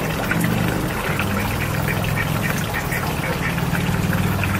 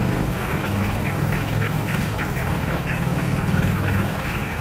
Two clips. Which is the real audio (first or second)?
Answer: first